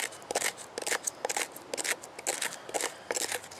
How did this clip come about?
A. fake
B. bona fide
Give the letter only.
B